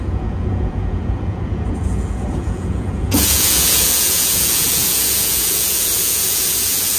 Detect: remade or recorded remade